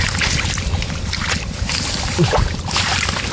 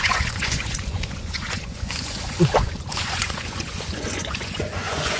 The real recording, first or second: first